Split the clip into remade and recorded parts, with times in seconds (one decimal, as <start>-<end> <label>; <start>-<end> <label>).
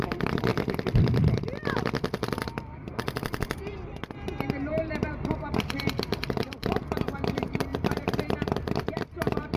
0.0-0.5 remade; 0.5-4.7 recorded; 4.7-9.6 remade